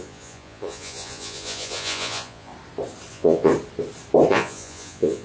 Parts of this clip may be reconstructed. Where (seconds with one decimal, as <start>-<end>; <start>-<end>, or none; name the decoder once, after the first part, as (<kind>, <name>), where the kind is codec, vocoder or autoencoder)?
0.0-2.5 (vocoder, Vocos); 3.1-3.5; 4.3-5.2